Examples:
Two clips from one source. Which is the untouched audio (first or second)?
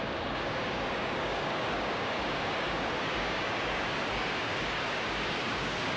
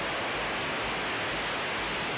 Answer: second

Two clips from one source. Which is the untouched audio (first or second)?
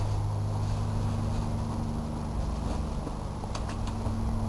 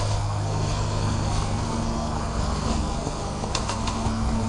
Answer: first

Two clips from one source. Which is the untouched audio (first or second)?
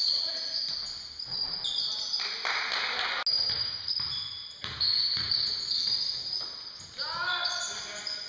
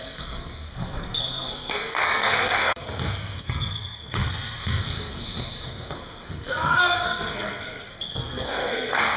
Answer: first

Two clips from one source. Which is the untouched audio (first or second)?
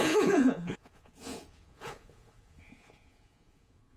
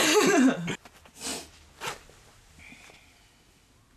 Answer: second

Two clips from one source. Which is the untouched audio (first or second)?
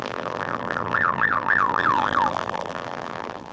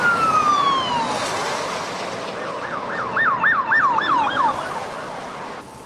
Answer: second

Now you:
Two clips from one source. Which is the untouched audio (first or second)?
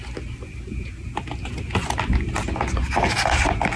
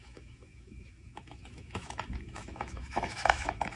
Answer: first